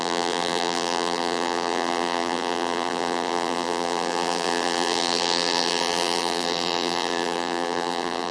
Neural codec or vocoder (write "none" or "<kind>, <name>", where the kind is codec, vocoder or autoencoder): vocoder, BigVGAN v2